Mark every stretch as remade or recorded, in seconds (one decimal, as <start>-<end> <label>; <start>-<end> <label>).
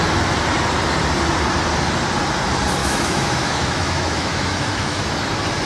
0.0-2.8 recorded; 2.8-5.1 remade; 5.1-5.7 recorded